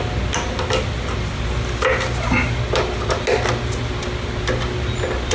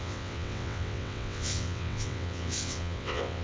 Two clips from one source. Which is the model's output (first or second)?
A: second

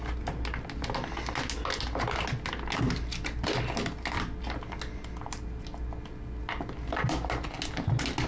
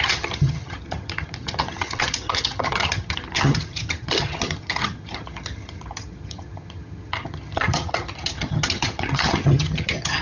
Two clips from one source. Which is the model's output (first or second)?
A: second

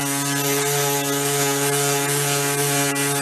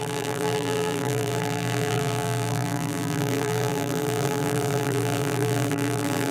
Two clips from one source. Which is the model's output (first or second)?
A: second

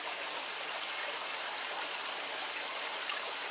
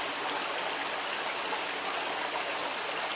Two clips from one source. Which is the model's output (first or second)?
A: first